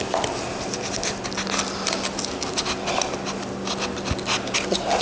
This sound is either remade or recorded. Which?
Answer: recorded